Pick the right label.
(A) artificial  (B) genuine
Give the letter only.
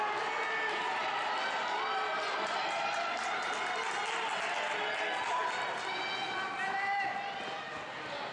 B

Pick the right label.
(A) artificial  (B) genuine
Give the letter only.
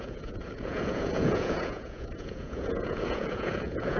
A